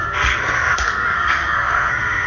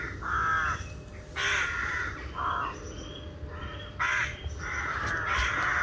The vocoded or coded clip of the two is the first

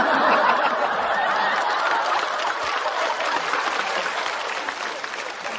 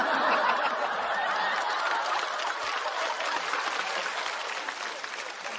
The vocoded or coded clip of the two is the first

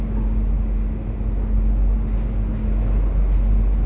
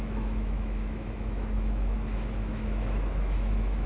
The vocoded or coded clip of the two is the second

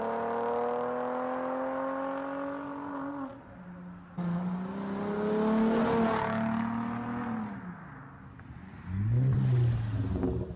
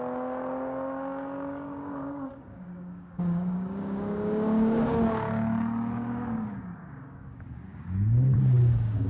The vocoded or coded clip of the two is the second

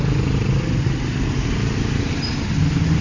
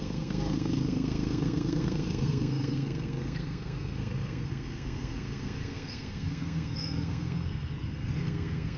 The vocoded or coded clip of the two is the second